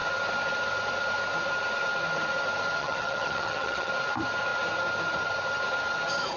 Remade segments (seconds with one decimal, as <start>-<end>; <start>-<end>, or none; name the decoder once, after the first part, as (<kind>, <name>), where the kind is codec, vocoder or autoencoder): 2.8-3.9 (vocoder, HiFi-GAN)